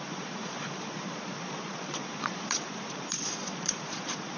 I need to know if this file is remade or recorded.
remade